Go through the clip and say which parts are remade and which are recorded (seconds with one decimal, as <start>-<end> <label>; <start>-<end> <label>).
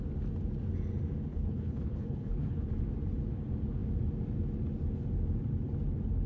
0.0-1.3 recorded; 1.3-2.7 remade; 2.7-6.3 recorded